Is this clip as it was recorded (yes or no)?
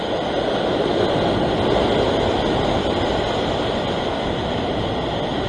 yes